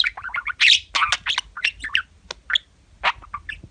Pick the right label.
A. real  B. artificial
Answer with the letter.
A